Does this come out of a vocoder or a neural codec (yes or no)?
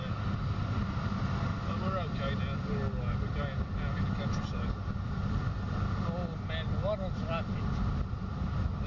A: no